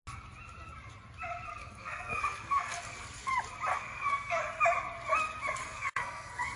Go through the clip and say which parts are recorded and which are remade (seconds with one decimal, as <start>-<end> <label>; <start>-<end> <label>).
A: 0.0-1.5 recorded; 1.5-3.3 remade; 3.3-3.7 recorded; 3.7-4.4 remade; 4.4-5.6 recorded; 5.6-6.6 remade